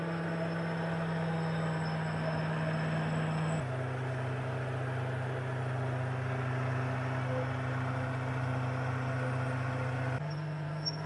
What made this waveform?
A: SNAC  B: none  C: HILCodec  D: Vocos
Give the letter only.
B